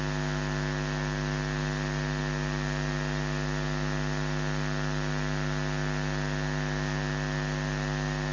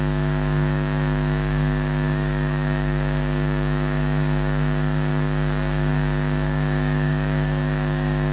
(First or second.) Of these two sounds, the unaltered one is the first